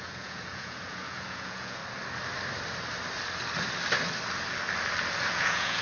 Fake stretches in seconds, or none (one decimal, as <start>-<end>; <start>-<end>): 0.0-1.8; 5.3-5.8